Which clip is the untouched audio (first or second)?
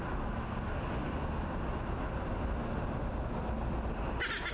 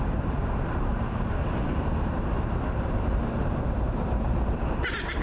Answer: first